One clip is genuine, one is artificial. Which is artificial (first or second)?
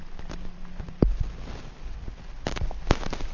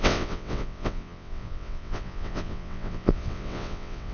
second